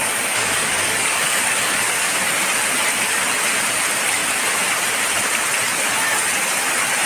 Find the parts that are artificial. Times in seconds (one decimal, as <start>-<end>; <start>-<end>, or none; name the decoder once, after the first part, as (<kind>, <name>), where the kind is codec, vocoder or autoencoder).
0.0-2.3 (codec, DAC)